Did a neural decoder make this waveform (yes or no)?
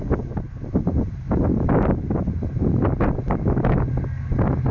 no